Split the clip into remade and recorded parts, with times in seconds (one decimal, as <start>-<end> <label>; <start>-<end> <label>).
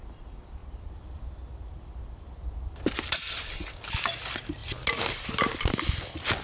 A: 0.0-6.4 recorded